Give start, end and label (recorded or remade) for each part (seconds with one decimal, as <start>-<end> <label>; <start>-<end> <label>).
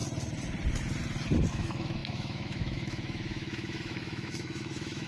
0.0-1.5 recorded; 1.5-5.1 remade